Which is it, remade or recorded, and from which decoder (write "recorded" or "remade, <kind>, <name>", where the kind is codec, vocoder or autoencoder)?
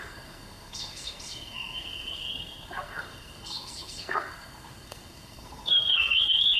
remade, codec, SNAC